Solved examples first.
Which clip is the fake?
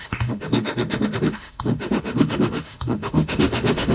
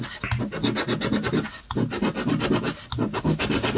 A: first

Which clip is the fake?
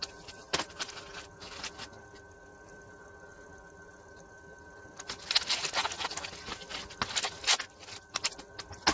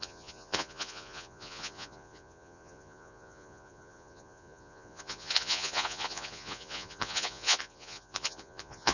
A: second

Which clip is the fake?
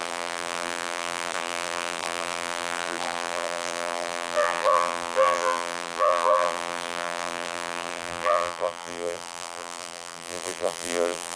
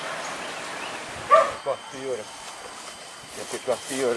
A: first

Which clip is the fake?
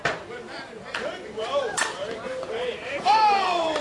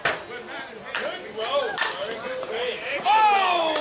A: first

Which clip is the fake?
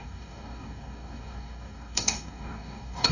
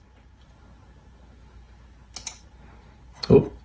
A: first